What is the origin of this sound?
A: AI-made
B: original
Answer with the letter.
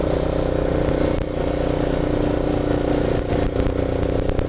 B